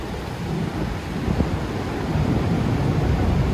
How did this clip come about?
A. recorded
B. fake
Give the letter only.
A